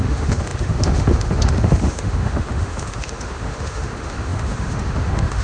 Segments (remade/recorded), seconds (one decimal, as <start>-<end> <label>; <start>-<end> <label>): 0.0-5.4 remade